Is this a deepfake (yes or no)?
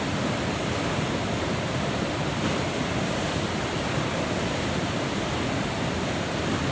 no